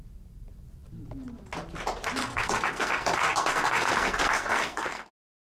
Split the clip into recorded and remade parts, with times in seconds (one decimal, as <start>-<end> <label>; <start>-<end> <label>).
0.0-2.2 recorded; 2.2-5.1 remade; 5.1-5.6 recorded